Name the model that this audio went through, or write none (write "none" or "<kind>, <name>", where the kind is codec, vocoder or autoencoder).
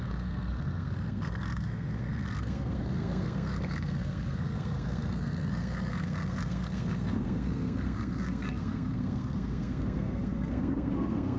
codec, SNAC